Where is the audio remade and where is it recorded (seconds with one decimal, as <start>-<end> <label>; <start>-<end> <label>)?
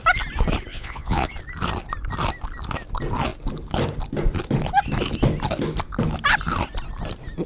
0.0-0.7 recorded; 0.7-1.3 remade; 1.3-7.5 recorded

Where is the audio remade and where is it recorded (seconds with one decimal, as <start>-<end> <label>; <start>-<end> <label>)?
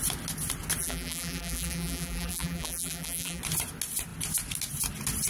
0.0-0.8 recorded; 0.8-3.4 remade; 3.4-5.3 recorded